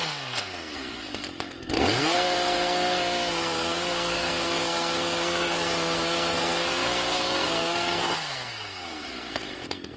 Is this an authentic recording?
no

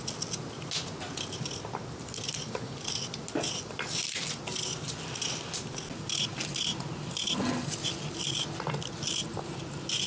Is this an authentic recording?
yes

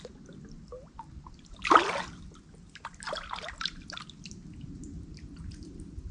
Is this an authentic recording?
yes